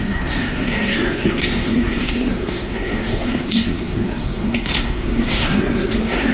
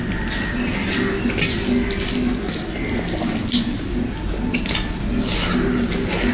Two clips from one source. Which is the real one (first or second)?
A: second